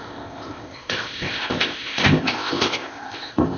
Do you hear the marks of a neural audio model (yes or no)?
yes